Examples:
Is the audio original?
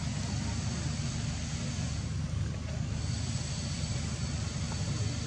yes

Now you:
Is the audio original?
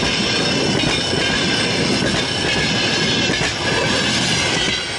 yes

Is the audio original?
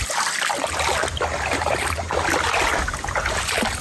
yes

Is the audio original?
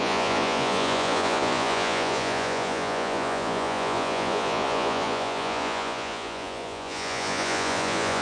no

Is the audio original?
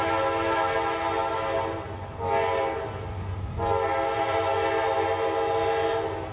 yes